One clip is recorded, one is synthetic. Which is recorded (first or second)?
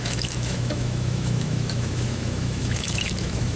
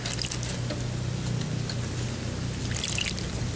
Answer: second